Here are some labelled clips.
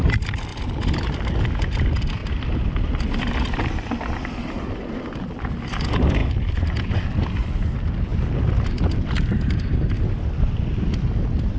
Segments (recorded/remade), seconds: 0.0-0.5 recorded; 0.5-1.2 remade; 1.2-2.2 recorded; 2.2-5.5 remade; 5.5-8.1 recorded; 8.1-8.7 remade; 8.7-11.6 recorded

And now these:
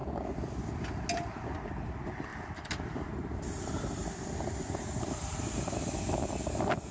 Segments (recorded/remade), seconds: 0.0-2.3 recorded; 2.3-5.7 remade; 5.7-6.9 recorded

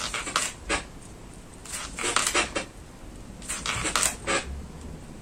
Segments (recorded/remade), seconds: 0.0-5.2 recorded